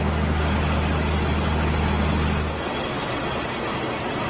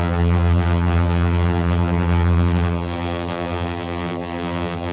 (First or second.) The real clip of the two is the first